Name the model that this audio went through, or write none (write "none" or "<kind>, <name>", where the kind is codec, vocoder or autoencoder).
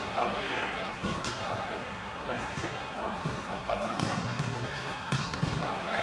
codec, SNAC